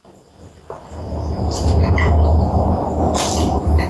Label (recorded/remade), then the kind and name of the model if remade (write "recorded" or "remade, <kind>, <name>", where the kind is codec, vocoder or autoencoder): recorded